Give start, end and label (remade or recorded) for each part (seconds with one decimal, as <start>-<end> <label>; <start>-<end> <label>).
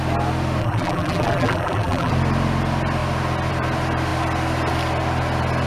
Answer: 0.0-0.6 recorded; 0.6-2.1 remade; 2.1-5.7 recorded